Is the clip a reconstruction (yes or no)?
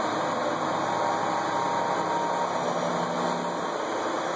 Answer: no